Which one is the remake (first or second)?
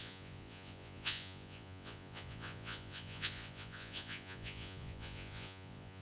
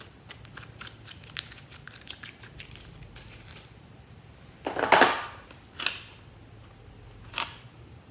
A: first